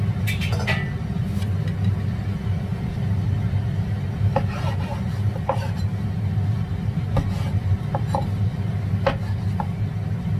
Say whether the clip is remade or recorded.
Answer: recorded